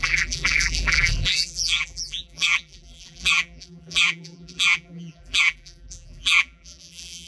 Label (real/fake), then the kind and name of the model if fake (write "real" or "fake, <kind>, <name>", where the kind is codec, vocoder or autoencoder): fake, vocoder, BigVGAN v2